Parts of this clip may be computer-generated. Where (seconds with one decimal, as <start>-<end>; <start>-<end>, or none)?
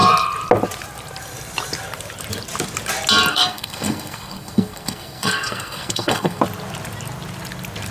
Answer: 3.3-6.4